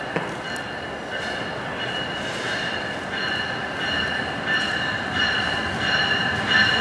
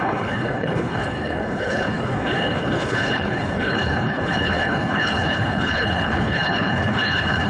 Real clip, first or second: first